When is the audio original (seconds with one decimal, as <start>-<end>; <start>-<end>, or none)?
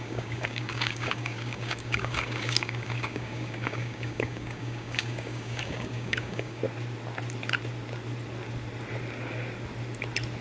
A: 6.6-10.4